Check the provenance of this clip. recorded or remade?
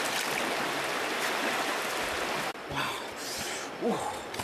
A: recorded